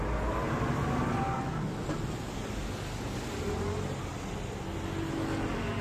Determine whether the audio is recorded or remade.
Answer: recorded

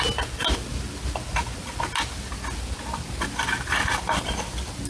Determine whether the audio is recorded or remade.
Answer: recorded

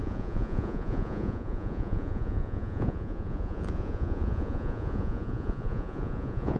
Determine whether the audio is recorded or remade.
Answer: remade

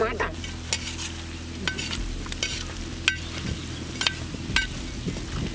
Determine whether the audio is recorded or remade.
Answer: recorded